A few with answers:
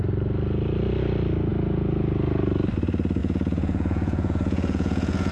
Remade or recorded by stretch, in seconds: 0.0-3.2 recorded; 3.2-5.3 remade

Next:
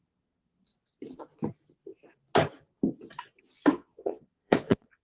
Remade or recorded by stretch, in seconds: 0.0-0.7 remade; 0.7-3.7 recorded; 3.7-5.0 remade

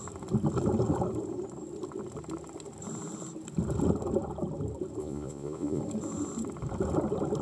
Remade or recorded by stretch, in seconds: 0.0-5.0 recorded; 5.0-5.8 remade; 5.8-7.4 recorded

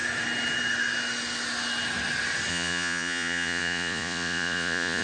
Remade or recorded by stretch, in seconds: 0.0-2.5 recorded; 2.5-5.0 remade

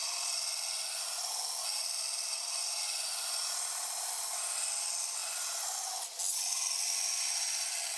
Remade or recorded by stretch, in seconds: 0.0-8.0 recorded

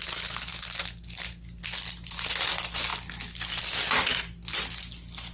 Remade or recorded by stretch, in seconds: 0.0-5.3 recorded